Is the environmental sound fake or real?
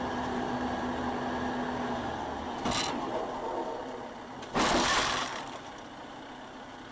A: real